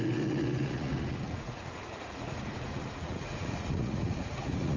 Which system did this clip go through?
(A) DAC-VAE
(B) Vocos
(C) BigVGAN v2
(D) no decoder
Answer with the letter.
B